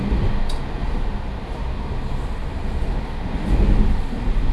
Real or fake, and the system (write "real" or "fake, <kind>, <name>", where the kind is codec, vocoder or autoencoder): real